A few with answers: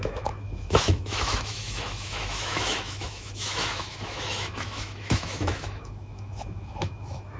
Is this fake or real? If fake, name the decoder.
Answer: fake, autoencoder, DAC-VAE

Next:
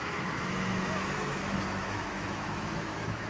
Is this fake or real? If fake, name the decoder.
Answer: fake, autoencoder, DAC-VAE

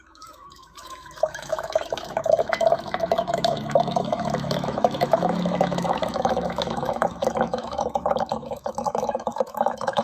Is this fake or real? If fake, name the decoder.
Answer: fake, autoencoder, DAC-VAE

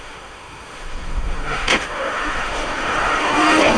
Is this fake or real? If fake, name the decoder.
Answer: fake, autoencoder, DAC-VAE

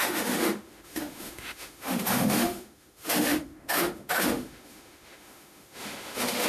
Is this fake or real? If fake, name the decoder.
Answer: fake, autoencoder, DAC-VAE